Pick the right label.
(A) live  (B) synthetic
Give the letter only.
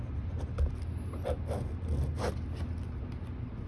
A